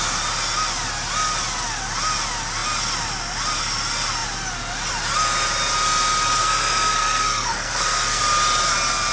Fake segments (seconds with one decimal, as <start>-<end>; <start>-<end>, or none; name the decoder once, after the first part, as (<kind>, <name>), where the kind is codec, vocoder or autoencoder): 6.4-8.2 (codec, SNAC)